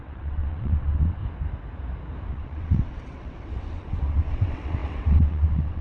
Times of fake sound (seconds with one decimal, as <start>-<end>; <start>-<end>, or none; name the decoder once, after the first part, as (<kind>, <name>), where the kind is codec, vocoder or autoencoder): 0.0-1.2 (vocoder, WaveNeXt); 2.3-5.8